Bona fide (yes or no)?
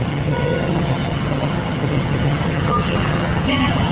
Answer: no